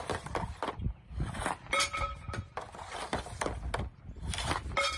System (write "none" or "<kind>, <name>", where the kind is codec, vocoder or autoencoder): none